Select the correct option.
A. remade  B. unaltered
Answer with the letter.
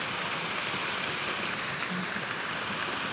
B